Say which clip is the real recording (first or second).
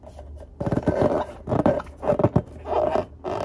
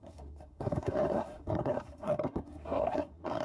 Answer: first